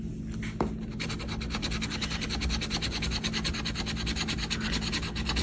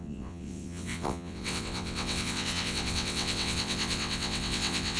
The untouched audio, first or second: first